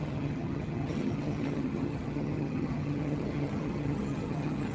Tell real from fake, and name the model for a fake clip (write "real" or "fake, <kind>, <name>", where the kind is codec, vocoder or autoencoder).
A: fake, vocoder, HiFi-GAN